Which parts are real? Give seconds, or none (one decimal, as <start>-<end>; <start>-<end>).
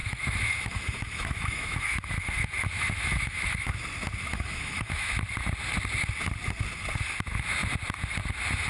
3.7-4.3; 5.1-8.7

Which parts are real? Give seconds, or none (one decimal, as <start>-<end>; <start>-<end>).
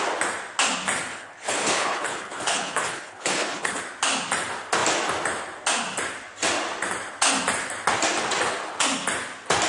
0.0-1.1; 3.8-9.7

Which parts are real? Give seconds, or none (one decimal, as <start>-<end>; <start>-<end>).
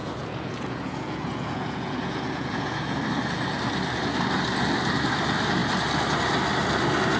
3.0-7.2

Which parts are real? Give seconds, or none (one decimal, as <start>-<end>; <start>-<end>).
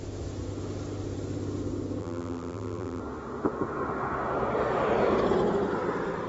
0.0-2.0; 3.0-6.3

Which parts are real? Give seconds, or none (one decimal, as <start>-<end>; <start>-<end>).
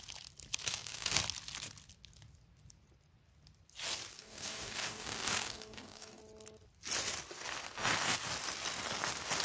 0.0-0.6; 1.2-4.1; 6.2-9.4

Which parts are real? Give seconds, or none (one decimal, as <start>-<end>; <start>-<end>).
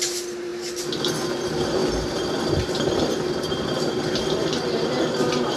0.0-5.6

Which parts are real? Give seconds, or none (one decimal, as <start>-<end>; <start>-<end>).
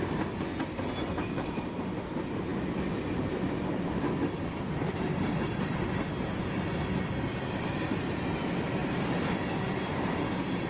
0.0-10.7